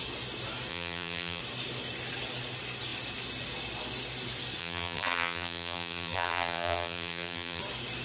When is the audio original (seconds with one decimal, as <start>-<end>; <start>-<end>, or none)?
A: 0.0-0.7; 1.4-4.6; 7.6-8.0

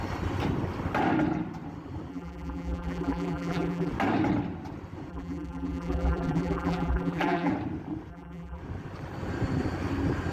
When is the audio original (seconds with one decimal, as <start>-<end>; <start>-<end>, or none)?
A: 0.0-2.1; 3.9-5.1; 7.5-8.1; 8.6-10.3

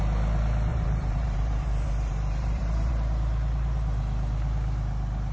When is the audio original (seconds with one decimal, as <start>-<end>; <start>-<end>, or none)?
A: 0.0-0.7; 2.9-5.3

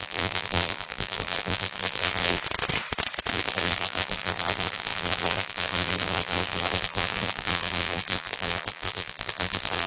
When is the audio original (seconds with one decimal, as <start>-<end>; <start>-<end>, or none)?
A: 2.4-3.3

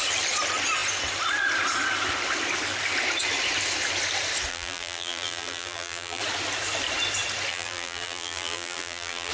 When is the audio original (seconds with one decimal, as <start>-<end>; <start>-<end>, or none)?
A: 0.0-4.5; 6.2-7.5